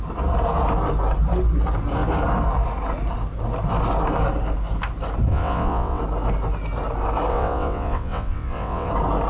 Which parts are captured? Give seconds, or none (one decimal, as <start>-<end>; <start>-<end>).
0.0-5.3; 6.0-7.3; 8.9-9.3